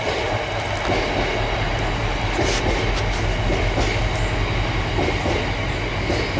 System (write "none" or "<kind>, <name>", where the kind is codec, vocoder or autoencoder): none